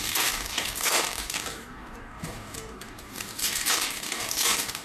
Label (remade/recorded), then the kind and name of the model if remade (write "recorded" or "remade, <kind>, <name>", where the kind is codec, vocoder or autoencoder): remade, codec, DAC